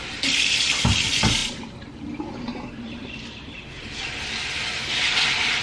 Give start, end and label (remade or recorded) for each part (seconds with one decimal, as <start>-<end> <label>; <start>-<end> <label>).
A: 0.0-5.6 remade